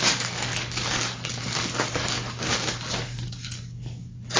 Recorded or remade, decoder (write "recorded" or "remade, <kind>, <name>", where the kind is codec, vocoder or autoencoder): remade, codec, DAC